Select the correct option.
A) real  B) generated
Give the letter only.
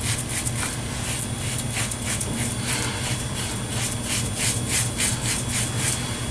A